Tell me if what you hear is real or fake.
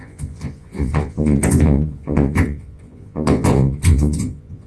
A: fake